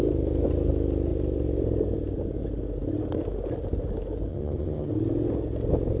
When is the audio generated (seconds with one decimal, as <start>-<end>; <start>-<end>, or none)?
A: 4.3-4.9